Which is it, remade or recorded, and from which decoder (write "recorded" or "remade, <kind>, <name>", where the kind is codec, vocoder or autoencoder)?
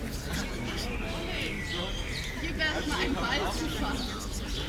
recorded